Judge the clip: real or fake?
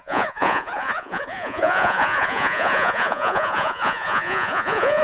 fake